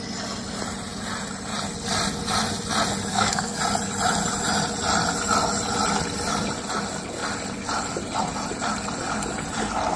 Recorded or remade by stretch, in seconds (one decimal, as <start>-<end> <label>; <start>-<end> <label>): 0.0-3.1 recorded; 3.1-3.6 remade; 3.6-10.0 recorded